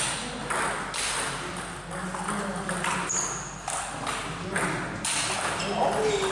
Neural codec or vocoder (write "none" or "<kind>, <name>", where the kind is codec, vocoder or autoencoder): none